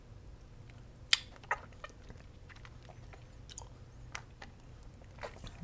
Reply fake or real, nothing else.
real